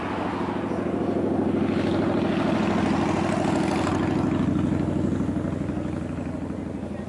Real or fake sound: real